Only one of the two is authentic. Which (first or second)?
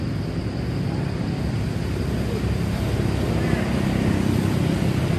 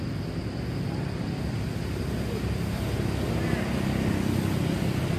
second